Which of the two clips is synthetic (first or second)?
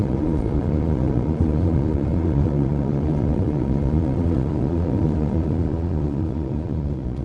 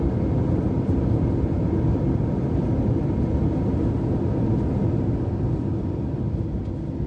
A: first